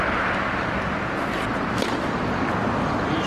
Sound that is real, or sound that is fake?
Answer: real